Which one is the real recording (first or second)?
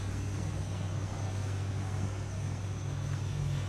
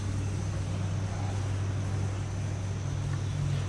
second